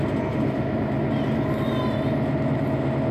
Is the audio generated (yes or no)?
no